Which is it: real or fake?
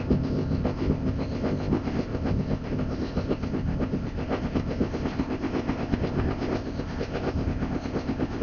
fake